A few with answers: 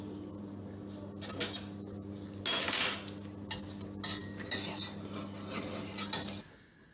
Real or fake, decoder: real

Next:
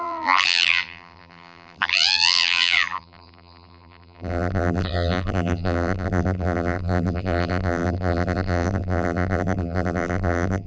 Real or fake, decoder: fake, vocoder, BigVGAN v2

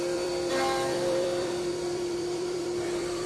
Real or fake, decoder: fake, vocoder, BigVGAN v2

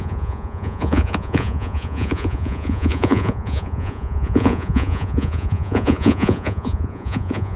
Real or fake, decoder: fake, vocoder, Vocos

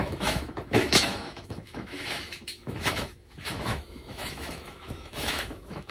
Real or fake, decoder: fake, autoencoder, DAC-VAE